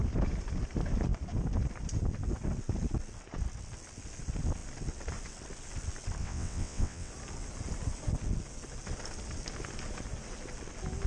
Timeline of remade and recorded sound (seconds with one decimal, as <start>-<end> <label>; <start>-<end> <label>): 0.0-6.2 recorded; 6.2-7.1 remade; 7.1-11.1 recorded